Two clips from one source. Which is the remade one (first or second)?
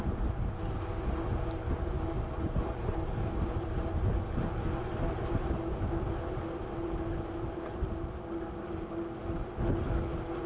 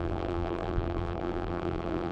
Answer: second